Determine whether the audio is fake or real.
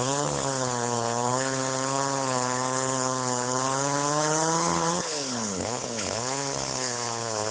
fake